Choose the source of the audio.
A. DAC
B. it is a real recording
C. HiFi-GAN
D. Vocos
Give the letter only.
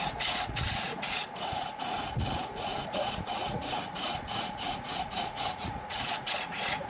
D